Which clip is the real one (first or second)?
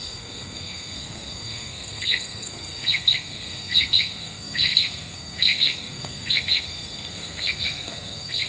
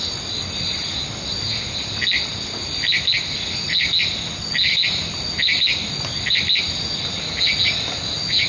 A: second